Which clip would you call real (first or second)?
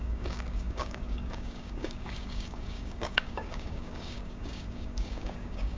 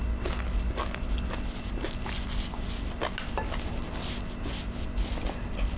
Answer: second